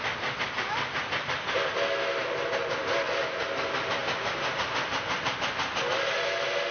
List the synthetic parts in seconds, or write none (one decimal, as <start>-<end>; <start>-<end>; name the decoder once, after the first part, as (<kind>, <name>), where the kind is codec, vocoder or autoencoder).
none